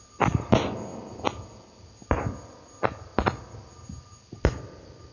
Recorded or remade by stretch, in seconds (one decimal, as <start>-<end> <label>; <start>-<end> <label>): 0.0-5.1 recorded

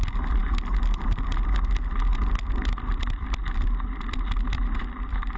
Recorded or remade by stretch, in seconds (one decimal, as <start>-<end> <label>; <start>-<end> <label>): 0.0-5.4 recorded

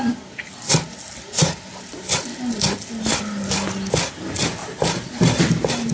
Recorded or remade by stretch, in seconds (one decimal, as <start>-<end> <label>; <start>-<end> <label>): 0.0-5.9 recorded